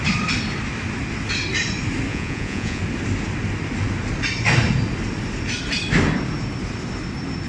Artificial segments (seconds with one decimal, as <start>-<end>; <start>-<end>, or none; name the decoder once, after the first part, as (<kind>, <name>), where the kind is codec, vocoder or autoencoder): 2.1-2.8 (vocoder, Vocos)